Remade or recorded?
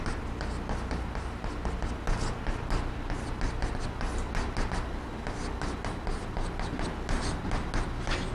recorded